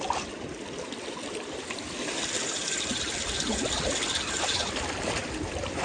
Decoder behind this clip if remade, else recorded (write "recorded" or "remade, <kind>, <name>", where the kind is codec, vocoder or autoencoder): recorded